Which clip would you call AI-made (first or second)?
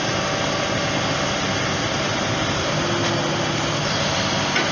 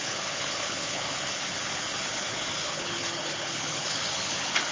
second